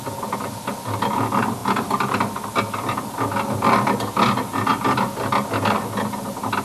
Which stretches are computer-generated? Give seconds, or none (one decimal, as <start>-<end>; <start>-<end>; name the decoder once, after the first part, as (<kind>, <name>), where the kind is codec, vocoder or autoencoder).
none